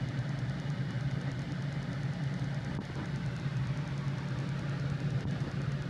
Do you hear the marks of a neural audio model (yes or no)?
no